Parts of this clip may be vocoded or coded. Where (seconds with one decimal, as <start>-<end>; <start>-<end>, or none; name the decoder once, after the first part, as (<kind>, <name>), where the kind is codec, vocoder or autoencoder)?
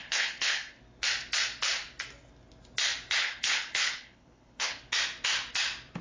0.0-0.8 (codec, HILCodec); 3.2-4.8